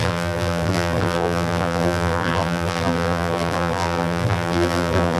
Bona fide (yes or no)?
no